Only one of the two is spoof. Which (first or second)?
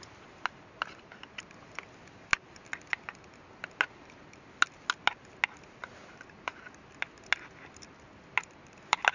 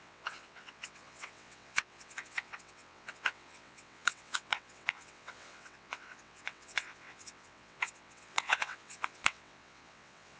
second